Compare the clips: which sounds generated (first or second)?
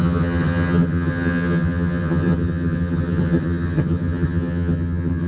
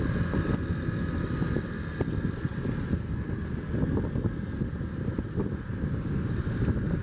first